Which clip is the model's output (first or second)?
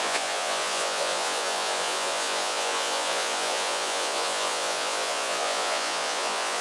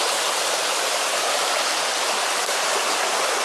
first